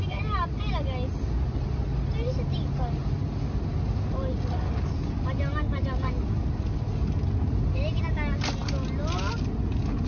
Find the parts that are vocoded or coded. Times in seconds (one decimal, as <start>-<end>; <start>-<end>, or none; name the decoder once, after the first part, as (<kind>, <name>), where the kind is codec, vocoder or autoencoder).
none